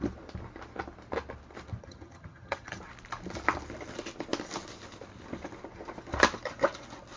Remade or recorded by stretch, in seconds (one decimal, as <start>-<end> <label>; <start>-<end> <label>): 0.0-1.8 recorded; 1.8-2.8 remade; 2.8-7.2 recorded